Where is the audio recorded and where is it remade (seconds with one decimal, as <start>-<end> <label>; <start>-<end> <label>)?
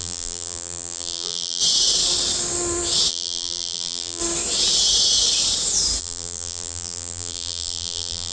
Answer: 0.0-1.6 remade; 1.6-3.1 recorded; 3.1-4.2 remade; 4.2-6.0 recorded; 6.0-8.3 remade